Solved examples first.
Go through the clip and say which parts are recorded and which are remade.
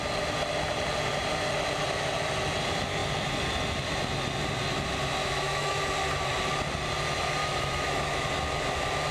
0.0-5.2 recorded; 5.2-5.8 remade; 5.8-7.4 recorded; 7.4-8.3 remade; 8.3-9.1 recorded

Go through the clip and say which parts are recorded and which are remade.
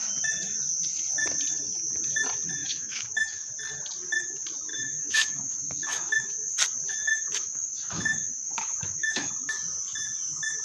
0.0-2.6 recorded; 2.6-3.5 remade; 3.5-4.7 recorded; 4.7-6.3 remade; 6.3-7.0 recorded; 7.0-9.3 remade; 9.3-10.6 recorded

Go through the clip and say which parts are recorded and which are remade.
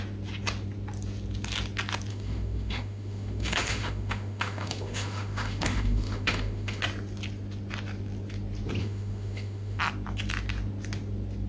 0.0-2.1 recorded; 2.1-6.8 remade; 6.8-8.8 recorded; 8.8-9.8 remade; 9.8-11.5 recorded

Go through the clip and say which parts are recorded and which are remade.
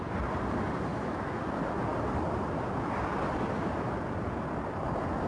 0.0-0.9 recorded; 0.9-1.4 remade; 1.4-5.3 recorded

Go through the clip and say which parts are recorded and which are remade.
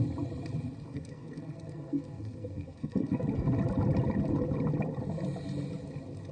0.0-0.9 recorded; 0.9-3.5 remade; 3.5-6.3 recorded